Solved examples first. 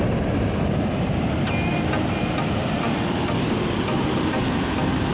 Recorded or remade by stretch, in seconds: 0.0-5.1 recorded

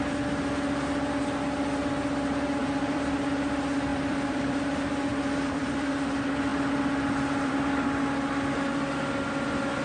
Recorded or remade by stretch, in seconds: 0.0-2.6 recorded; 2.6-3.3 remade; 3.3-3.9 recorded; 3.9-4.6 remade; 4.6-5.1 recorded; 5.1-5.9 remade; 5.9-9.8 recorded